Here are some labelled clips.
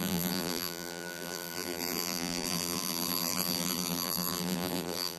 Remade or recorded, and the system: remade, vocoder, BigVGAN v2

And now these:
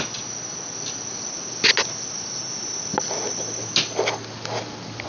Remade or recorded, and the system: recorded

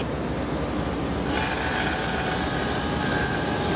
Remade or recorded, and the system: recorded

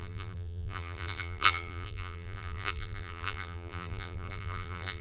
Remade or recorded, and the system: remade, vocoder, BigVGAN v2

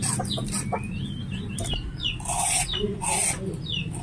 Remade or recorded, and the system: recorded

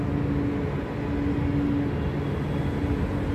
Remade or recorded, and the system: recorded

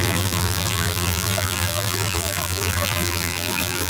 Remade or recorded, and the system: remade, vocoder, BigVGAN v2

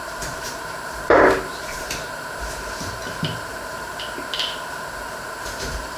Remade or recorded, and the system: remade, vocoder, BigVGAN v2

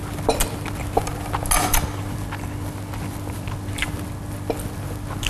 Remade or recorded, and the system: recorded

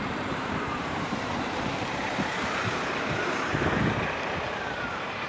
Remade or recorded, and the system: remade, vocoder, BigVGAN v2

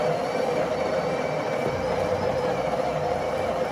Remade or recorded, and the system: recorded